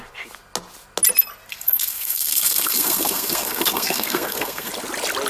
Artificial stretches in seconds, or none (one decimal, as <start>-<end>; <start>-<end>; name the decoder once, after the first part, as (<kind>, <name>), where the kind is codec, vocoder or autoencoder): 1.5-4.7 (codec, SNAC)